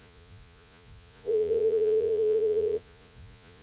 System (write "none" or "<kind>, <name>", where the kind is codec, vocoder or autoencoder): vocoder, Vocos